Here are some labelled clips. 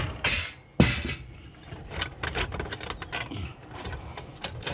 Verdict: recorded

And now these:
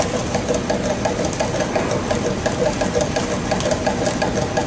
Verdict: recorded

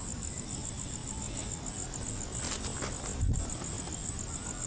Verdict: recorded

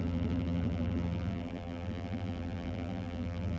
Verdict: remade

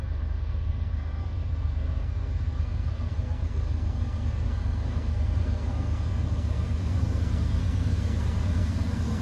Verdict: remade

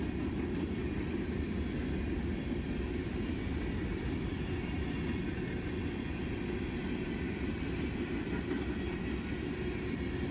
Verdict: recorded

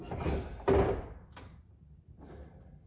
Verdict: recorded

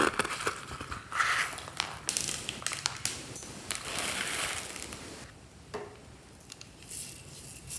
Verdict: recorded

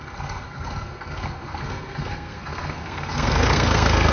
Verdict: remade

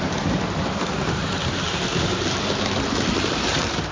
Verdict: recorded